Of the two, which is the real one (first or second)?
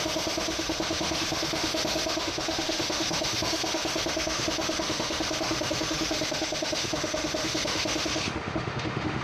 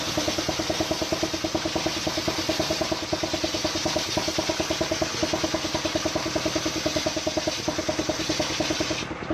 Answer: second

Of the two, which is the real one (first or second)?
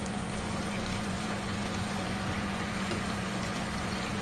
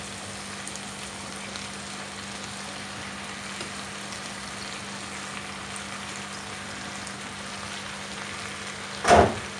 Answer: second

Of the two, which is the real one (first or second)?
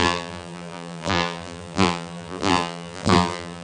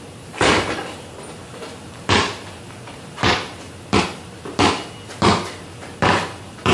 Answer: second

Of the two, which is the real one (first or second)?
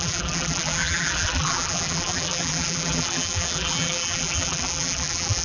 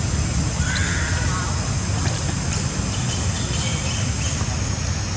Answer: second